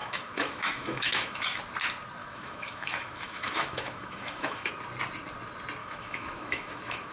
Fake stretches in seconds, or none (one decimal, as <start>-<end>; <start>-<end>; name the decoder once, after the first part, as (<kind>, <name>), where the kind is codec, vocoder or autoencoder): 0.0-1.6 (autoencoder, DAC-VAE); 2.2-4.7; 5.8-7.1